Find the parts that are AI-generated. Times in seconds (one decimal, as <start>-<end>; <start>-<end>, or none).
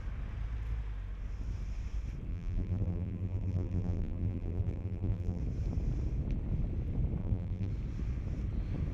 2.3-5.4; 7.2-7.7